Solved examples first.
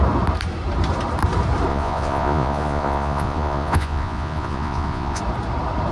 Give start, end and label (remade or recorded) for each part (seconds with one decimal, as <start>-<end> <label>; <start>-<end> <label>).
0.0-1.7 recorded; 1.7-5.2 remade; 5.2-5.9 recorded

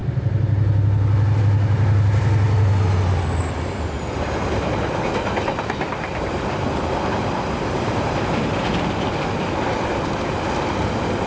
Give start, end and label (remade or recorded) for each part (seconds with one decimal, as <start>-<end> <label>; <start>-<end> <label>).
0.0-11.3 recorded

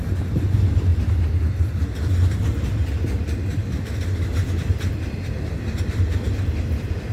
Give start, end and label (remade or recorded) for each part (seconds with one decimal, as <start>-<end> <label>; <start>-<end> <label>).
0.0-0.9 remade; 0.9-1.5 recorded; 1.5-7.1 remade

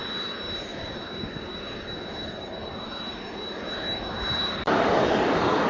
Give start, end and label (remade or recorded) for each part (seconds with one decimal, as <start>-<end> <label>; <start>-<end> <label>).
0.0-0.7 recorded; 0.7-1.5 remade; 1.5-4.4 recorded; 4.4-5.7 remade